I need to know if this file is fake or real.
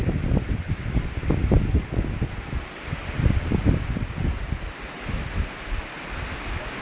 real